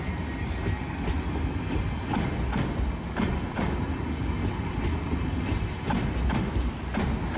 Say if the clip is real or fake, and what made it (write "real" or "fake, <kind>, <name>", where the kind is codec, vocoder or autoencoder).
real